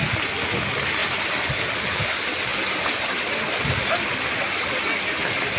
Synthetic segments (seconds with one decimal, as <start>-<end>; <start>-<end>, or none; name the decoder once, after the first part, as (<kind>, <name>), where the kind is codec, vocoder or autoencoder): none